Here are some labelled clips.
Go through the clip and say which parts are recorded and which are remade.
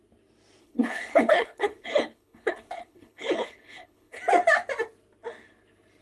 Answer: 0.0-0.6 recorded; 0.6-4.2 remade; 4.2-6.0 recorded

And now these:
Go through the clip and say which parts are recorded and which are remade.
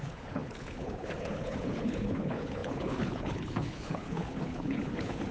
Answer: 0.0-5.3 remade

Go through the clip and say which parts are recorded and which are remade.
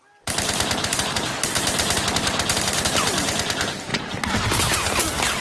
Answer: 0.0-5.4 recorded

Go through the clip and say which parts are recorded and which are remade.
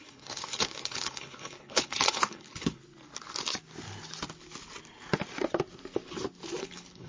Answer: 0.0-2.8 remade; 2.8-6.6 recorded; 6.6-7.1 remade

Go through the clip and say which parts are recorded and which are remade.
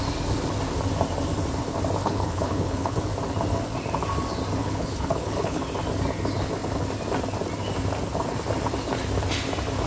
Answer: 0.0-2.0 recorded; 2.0-3.0 remade; 3.0-4.6 recorded; 4.6-5.6 remade; 5.6-9.9 recorded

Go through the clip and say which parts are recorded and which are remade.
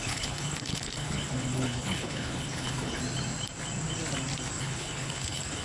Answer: 0.0-3.0 remade; 3.0-4.6 recorded; 4.6-5.6 remade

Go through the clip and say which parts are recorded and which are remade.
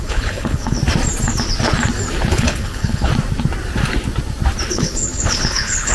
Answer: 0.0-0.8 remade; 0.8-2.3 recorded; 2.3-3.1 remade; 3.1-4.7 recorded; 4.7-5.9 remade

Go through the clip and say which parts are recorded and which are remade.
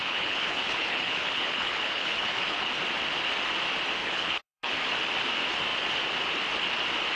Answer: 0.0-2.7 remade; 2.7-4.0 recorded; 4.0-4.7 remade; 4.7-7.2 recorded